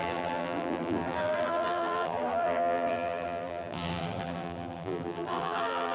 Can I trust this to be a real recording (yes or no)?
no